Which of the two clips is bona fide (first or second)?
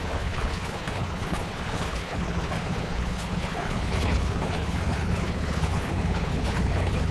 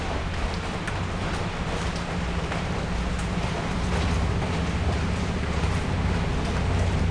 second